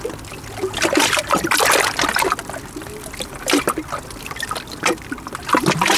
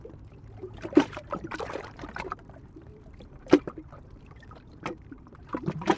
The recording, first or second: first